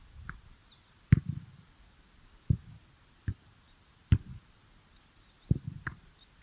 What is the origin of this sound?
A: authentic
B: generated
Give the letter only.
A